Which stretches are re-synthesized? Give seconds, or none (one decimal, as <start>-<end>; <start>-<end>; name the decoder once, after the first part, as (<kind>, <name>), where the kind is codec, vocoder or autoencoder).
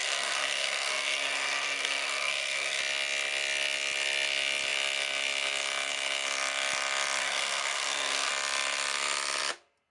0.0-2.8 (codec, SNAC); 7.2-8.3